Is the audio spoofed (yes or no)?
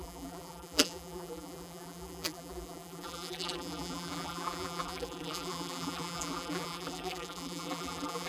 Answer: yes